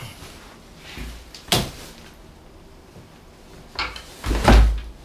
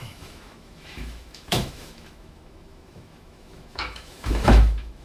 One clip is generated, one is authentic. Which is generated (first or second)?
second